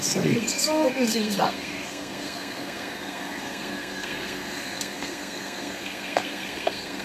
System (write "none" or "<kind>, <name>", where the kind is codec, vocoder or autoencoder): codec, SNAC